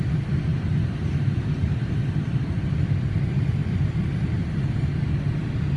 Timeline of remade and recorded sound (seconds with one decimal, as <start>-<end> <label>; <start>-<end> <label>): 0.0-4.4 remade; 4.4-5.8 recorded